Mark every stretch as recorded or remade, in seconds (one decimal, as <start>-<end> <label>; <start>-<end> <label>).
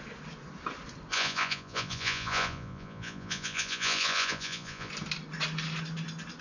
0.0-1.1 recorded; 1.1-4.9 remade; 4.9-6.4 recorded